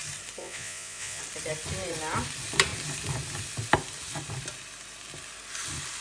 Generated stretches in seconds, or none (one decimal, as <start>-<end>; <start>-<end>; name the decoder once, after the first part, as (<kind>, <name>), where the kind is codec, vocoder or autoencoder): 0.4-1.2 (vocoder, Vocos)